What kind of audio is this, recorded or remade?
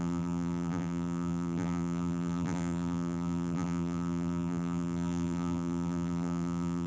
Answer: remade